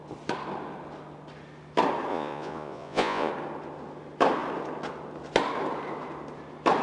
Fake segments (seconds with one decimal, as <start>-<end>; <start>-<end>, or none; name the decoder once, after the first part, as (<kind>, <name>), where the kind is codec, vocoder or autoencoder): 2.1-3.3 (vocoder, Vocos)